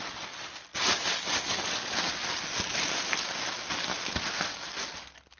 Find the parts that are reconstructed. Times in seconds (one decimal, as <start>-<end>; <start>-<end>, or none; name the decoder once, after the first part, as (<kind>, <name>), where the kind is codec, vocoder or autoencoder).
none